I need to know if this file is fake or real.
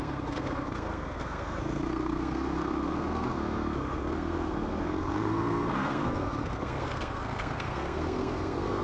fake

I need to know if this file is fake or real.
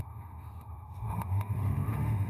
fake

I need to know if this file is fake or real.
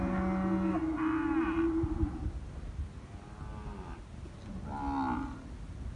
real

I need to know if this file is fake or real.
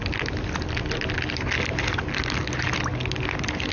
real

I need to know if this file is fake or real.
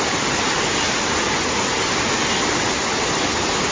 real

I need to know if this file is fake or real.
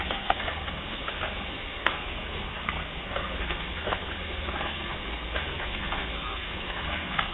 fake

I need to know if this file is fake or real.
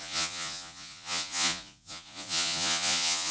fake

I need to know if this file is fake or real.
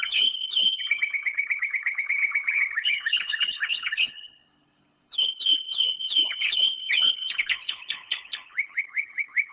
fake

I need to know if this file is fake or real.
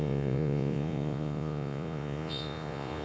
fake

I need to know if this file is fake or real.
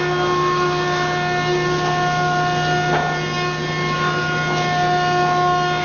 real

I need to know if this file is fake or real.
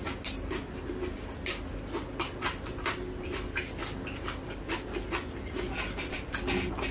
real